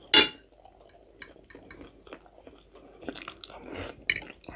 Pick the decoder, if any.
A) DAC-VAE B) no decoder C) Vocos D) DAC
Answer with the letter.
B